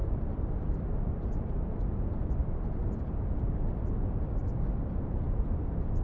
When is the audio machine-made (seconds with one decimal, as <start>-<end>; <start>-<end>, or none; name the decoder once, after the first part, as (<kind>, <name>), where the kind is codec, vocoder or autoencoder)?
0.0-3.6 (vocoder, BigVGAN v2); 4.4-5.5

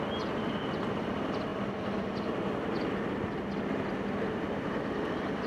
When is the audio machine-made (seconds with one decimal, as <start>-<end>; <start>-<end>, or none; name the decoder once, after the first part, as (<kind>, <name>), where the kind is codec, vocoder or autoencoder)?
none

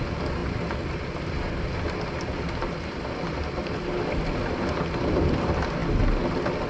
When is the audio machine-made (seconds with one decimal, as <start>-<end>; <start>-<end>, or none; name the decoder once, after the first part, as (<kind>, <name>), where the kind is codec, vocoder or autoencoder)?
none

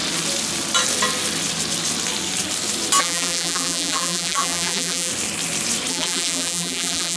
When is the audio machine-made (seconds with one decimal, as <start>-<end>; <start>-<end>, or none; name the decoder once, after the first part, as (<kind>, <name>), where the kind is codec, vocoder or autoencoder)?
3.0-5.1 (vocoder, BigVGAN v2); 5.9-7.2

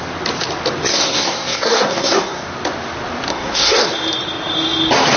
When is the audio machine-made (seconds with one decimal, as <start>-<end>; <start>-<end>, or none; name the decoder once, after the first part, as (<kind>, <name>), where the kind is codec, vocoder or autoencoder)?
0.9-2.4 (codec, SNAC); 3.3-3.8

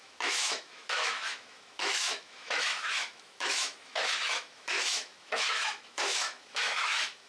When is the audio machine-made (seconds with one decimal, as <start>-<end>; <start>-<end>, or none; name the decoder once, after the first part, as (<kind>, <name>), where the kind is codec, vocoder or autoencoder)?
0.0-7.3 (autoencoder, DAC-VAE)